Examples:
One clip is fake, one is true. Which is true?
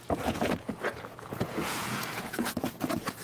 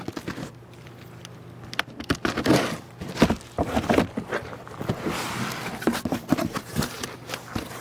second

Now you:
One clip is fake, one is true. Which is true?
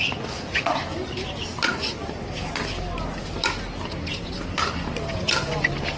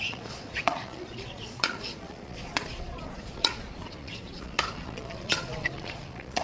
first